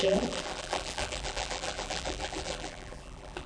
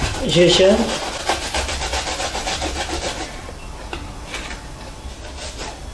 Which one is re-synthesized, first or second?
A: first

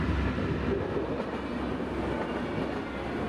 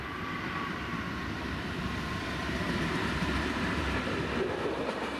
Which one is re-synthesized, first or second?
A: second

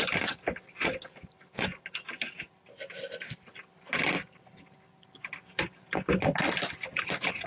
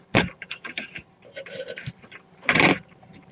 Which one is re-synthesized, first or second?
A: second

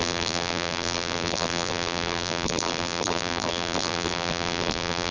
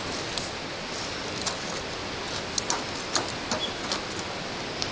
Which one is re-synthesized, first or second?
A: first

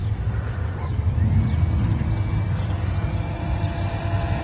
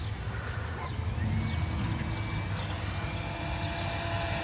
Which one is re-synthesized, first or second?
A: first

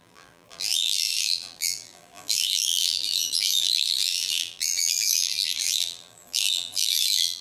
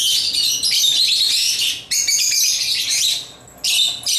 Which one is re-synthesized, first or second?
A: first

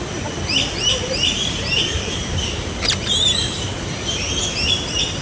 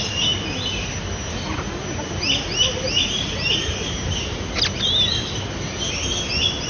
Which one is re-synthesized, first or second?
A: first